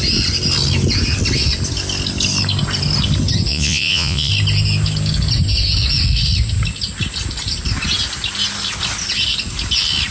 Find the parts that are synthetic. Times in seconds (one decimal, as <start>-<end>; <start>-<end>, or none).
3.5-4.3